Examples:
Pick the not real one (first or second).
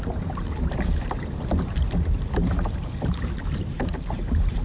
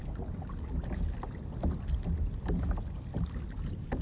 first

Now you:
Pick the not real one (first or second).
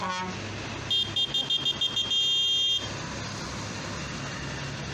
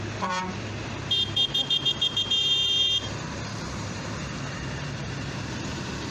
second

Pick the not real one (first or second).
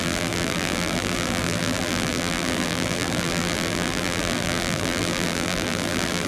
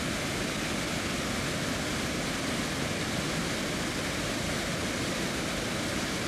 first